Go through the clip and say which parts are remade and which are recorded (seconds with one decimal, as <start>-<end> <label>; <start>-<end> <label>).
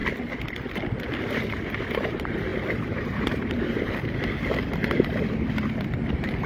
0.0-1.9 recorded; 1.9-4.8 remade; 4.8-6.1 recorded; 6.1-6.5 remade